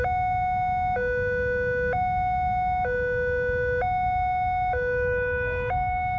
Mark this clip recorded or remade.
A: recorded